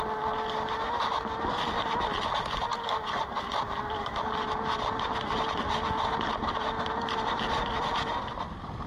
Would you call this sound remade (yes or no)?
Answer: no